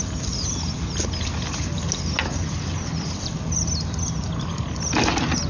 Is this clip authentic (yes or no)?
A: yes